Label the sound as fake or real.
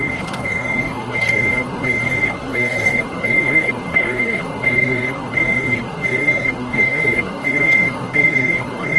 fake